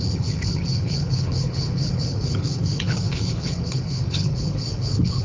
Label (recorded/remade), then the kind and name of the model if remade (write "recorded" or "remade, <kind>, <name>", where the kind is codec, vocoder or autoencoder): remade, codec, HILCodec